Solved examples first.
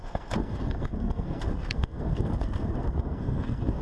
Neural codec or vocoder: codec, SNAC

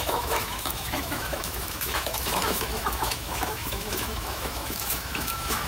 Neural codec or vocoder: autoencoder, DAC-VAE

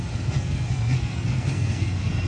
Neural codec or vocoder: codec, SNAC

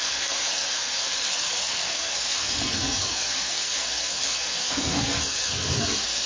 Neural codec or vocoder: codec, SNAC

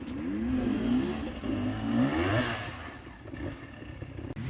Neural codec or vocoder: none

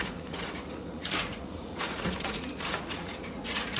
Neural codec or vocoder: vocoder, Vocos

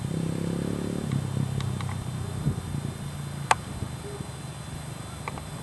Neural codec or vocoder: none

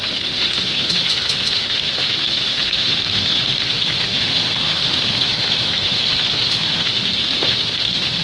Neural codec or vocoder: autoencoder, DAC-VAE